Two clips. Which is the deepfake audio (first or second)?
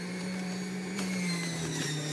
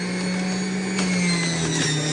first